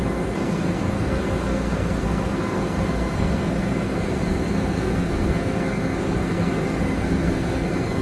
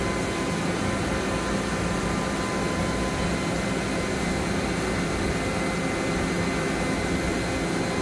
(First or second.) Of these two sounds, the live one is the second